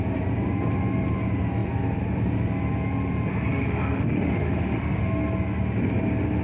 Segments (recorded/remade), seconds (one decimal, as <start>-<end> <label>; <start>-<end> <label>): 0.0-3.5 recorded; 3.5-5.0 remade; 5.0-6.4 recorded